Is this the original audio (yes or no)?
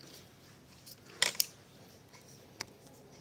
yes